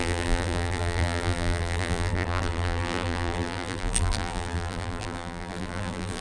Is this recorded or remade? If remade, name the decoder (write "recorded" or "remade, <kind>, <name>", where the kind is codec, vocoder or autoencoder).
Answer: remade, vocoder, BigVGAN v2